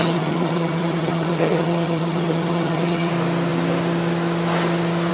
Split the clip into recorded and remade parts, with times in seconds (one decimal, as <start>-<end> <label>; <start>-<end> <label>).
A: 0.0-3.1 remade; 3.1-5.1 recorded